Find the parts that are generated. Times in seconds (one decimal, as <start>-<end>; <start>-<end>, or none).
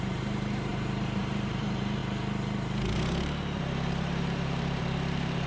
0.0-2.0; 3.6-5.5